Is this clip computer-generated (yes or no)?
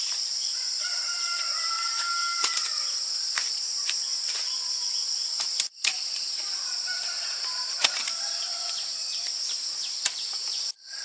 yes